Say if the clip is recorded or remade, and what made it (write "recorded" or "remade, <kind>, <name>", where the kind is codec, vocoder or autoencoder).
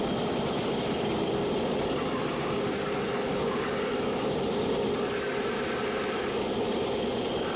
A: recorded